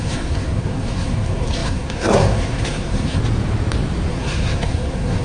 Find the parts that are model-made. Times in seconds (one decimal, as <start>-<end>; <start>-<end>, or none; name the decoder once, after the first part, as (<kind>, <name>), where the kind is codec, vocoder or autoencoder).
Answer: 0.0-3.2 (codec, SNAC); 4.1-5.2